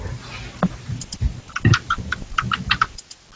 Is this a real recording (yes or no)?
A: yes